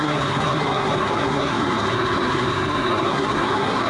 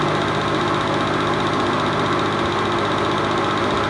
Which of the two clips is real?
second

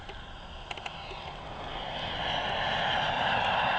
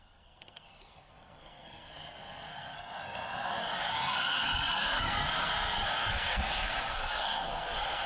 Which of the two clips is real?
first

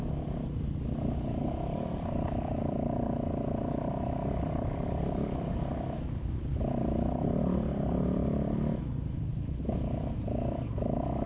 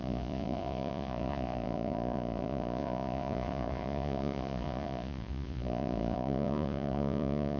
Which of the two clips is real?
first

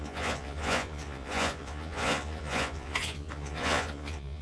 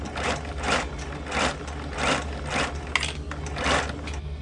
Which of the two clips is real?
second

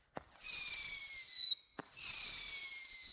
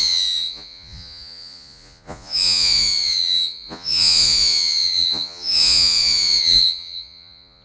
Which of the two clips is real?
first